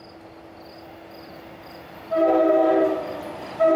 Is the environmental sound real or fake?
real